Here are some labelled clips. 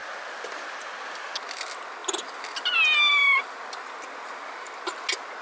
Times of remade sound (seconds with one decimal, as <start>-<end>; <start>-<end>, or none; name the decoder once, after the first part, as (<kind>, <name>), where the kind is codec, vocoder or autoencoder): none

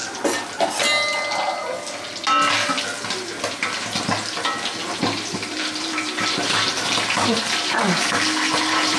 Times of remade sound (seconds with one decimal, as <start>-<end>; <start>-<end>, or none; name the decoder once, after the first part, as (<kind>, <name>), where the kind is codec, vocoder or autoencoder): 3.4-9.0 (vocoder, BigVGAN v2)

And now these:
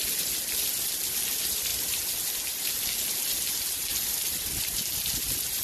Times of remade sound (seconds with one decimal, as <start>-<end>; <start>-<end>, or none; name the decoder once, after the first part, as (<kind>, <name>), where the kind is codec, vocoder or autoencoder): none

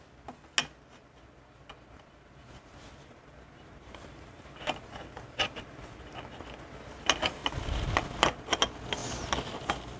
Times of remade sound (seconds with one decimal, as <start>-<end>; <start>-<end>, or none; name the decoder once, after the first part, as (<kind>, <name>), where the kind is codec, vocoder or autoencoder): 1.7-6.1 (vocoder, BigVGAN v2)